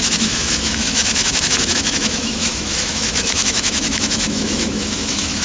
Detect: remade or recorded remade